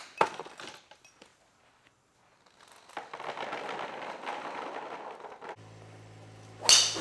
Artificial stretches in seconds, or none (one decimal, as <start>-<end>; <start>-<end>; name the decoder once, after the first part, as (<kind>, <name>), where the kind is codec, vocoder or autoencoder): none